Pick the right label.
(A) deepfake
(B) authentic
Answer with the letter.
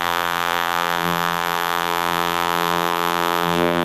A